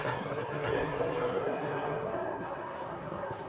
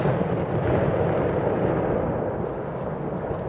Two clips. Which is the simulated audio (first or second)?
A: first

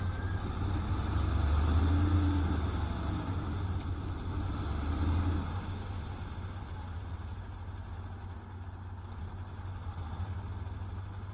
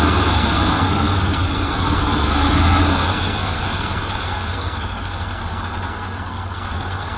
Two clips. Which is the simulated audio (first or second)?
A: second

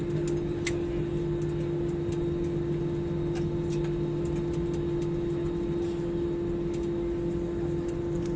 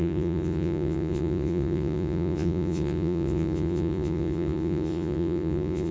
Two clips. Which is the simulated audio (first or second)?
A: second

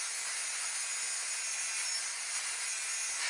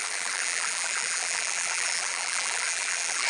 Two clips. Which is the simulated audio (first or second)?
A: second